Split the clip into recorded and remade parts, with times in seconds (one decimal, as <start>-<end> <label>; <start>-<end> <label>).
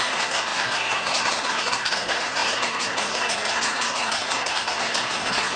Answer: 0.0-5.6 remade